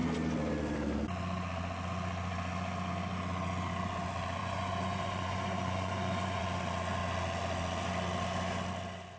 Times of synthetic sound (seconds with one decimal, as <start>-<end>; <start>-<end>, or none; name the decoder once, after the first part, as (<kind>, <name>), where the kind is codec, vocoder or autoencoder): 4.4-6.4 (vocoder, Vocos)